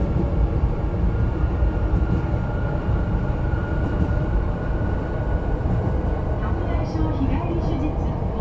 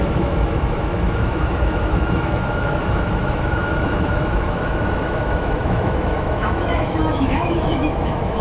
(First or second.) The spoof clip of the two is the second